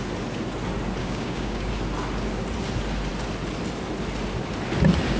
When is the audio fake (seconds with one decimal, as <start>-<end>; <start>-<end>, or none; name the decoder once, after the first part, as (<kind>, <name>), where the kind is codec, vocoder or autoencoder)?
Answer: 1.0-1.7 (codec, DAC)